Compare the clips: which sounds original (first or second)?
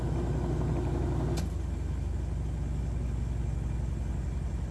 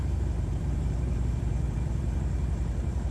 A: first